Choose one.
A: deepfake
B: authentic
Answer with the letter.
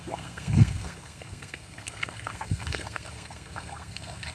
A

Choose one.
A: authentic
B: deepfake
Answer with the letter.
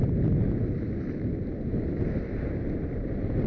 A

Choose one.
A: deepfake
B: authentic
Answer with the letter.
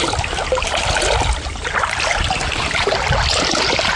B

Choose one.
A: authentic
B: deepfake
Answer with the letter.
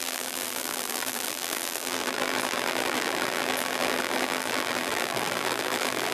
B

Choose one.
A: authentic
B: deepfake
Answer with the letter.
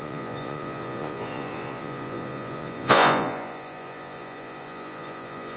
B